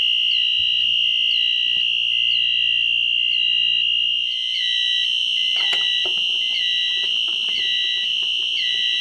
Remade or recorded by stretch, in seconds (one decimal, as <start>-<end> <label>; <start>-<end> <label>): 0.0-5.2 recorded; 5.2-6.0 remade; 6.0-6.9 recorded; 6.9-7.6 remade; 7.6-8.1 recorded; 8.1-9.0 remade